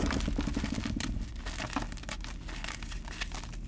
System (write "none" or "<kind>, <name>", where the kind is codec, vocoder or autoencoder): none